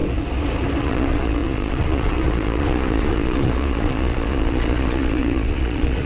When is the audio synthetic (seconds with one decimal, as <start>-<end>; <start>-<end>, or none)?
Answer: 0.8-6.1

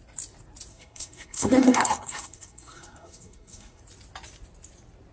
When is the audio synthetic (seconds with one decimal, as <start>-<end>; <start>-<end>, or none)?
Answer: 0.7-3.8

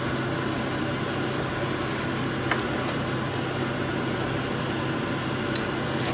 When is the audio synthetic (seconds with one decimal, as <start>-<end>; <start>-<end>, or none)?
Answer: none

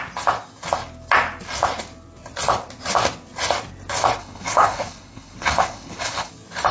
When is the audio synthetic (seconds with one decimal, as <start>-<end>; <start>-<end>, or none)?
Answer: 4.2-6.3

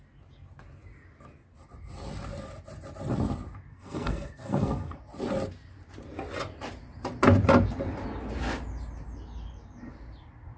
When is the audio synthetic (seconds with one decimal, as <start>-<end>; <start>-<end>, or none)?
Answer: 3.7-5.0

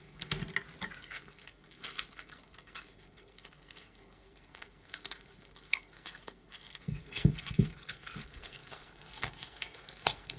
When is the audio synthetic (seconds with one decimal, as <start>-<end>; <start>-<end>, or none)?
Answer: 0.0-0.4; 1.0-10.4

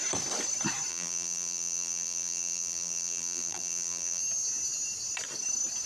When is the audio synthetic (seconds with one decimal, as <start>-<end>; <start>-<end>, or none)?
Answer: 0.9-4.2

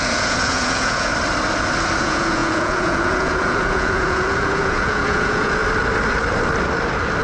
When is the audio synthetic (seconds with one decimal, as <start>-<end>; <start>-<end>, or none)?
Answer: 0.0-1.1; 2.0-5.6